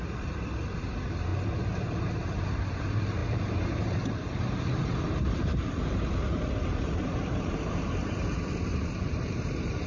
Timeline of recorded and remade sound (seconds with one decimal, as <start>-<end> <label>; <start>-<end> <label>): 0.0-1.3 remade; 1.3-2.0 recorded; 2.0-9.9 remade